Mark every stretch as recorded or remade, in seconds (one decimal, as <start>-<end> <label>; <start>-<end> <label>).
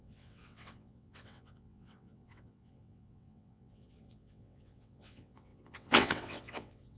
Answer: 0.0-7.0 remade